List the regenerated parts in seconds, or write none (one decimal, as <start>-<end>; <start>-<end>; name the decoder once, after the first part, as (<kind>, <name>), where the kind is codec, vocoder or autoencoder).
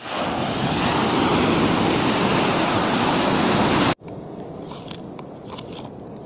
none